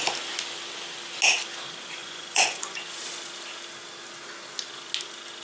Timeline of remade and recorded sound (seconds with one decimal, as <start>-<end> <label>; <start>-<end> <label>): 0.0-2.0 recorded; 2.0-2.8 remade; 2.8-5.4 recorded